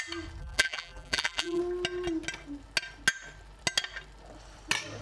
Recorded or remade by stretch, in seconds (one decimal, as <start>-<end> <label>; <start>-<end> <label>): 0.0-0.4 recorded; 0.4-1.6 remade; 1.6-5.0 recorded